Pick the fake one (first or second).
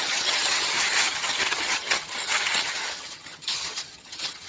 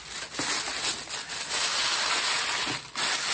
first